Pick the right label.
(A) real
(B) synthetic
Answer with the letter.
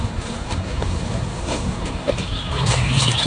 B